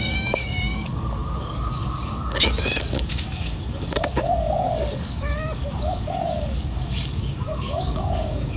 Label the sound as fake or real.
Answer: fake